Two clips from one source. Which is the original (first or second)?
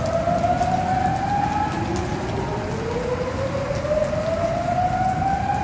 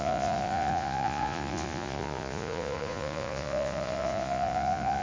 first